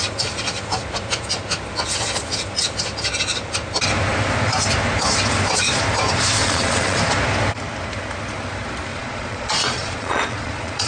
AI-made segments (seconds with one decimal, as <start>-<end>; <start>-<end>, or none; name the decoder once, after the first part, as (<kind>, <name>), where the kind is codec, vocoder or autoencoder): 6.4-7.0 (vocoder, Vocos); 8.9-10.9